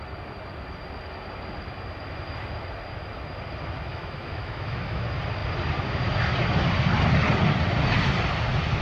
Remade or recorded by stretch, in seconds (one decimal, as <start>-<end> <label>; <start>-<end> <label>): 0.0-3.9 recorded; 3.9-5.0 remade; 5.0-8.8 recorded